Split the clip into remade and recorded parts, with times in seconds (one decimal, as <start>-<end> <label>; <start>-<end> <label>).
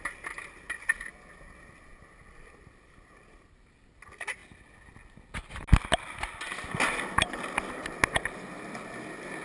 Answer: 0.0-9.4 recorded